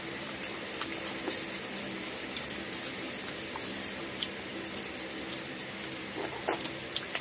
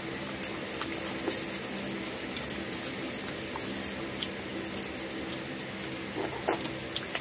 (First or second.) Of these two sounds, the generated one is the first